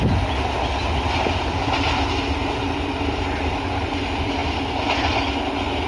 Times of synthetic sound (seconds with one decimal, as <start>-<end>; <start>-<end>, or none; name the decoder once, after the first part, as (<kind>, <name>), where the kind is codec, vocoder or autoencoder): 2.4-3.7 (vocoder, BigVGAN v2)